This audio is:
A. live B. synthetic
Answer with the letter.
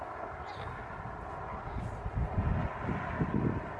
A